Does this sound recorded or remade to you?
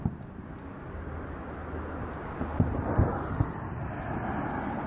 recorded